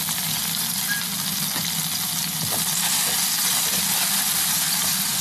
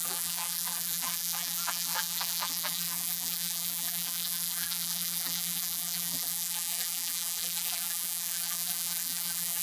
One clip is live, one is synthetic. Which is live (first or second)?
first